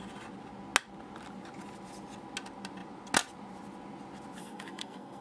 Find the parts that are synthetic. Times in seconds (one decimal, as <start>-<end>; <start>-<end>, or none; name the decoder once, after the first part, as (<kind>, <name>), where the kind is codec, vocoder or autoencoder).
4.4-5.2 (codec, SNAC)